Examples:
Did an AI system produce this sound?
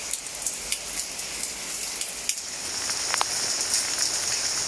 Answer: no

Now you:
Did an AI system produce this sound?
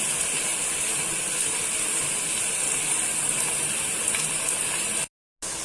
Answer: no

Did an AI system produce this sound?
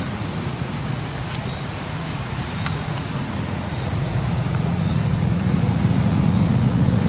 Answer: yes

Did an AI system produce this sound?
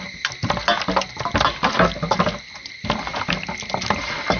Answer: no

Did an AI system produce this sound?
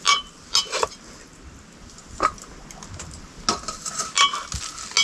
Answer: no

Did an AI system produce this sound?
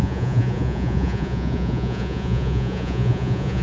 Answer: yes